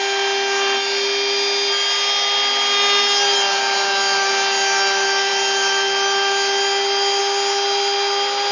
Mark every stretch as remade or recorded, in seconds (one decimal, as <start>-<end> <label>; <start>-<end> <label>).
0.0-8.5 recorded